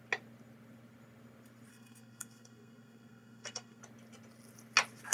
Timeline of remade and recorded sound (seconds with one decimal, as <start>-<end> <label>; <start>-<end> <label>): 0.0-1.7 recorded; 1.7-3.8 remade; 3.8-5.1 recorded